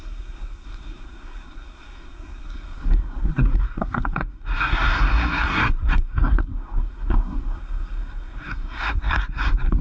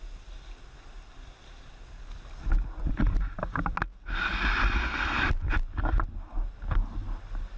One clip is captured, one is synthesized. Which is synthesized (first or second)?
first